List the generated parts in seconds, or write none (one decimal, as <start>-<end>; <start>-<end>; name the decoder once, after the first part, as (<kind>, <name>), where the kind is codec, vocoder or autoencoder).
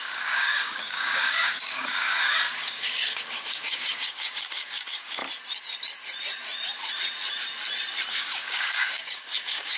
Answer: 0.0-5.2 (codec, DAC); 8.1-9.8